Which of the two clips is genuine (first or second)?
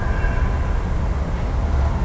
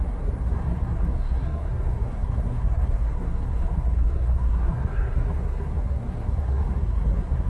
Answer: first